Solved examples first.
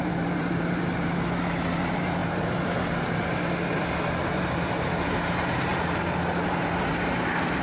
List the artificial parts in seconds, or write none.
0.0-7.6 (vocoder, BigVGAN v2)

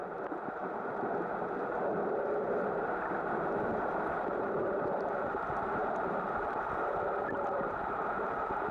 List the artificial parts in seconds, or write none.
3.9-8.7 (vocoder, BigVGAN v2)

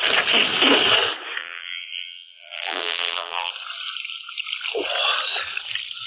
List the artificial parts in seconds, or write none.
1.4-3.5 (vocoder, BigVGAN v2)